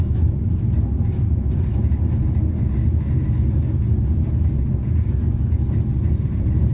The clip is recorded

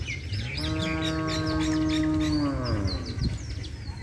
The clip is recorded